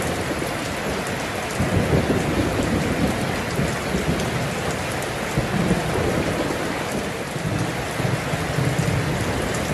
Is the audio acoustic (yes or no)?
yes